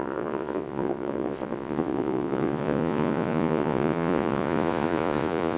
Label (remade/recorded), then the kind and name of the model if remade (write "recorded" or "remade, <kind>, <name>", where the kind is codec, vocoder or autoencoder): remade, vocoder, Vocos